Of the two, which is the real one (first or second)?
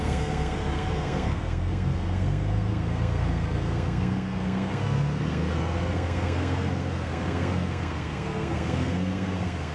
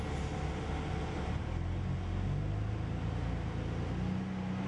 second